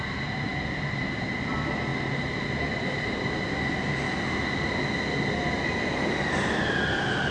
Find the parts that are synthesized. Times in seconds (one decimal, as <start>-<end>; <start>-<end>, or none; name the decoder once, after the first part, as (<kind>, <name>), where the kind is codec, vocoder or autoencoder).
none